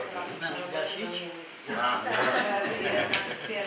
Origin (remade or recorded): recorded